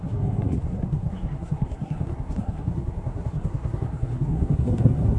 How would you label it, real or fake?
fake